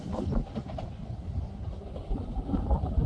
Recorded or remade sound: remade